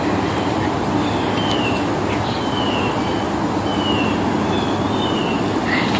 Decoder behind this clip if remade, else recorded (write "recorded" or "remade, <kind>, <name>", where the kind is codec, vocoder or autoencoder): recorded